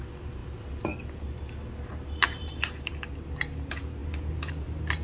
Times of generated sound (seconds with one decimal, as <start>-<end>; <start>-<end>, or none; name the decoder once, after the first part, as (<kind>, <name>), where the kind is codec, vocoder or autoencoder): 1.9-2.6 (vocoder, BigVGAN v2)